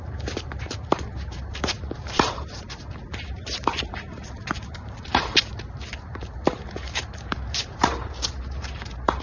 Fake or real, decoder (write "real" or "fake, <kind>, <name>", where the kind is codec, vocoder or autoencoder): fake, vocoder, BigVGAN v2